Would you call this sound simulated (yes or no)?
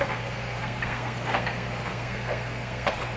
yes